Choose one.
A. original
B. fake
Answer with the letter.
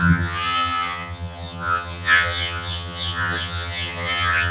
B